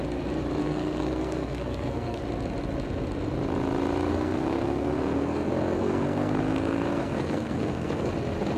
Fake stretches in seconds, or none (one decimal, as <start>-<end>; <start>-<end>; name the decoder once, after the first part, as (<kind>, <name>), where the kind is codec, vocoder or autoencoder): 0.6-2.2 (codec, SNAC); 4.1-8.1